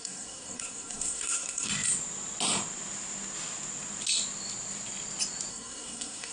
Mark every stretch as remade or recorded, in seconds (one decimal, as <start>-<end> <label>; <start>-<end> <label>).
0.0-1.7 remade; 1.7-5.5 recorded; 5.5-6.3 remade